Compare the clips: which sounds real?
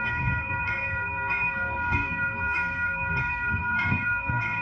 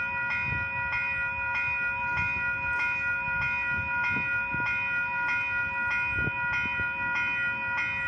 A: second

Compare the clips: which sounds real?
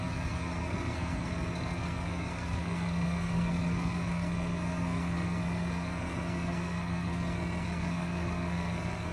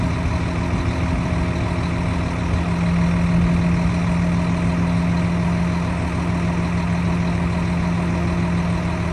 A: second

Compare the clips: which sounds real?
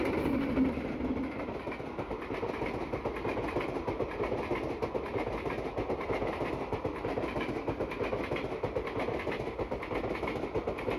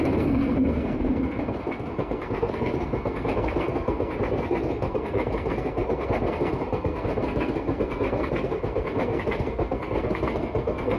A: first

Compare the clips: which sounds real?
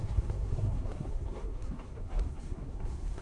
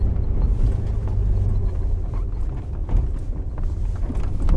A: second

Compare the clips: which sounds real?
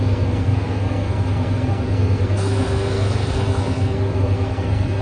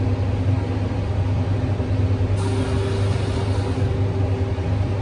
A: second